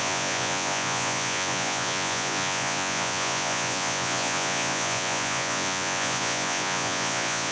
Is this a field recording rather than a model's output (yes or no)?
no